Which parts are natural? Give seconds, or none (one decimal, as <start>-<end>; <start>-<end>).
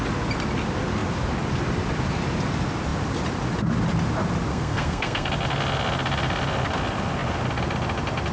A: 0.0-4.5; 5.3-8.3